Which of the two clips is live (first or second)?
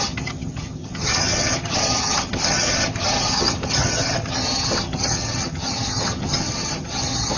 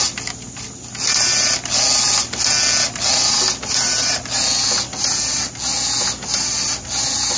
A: second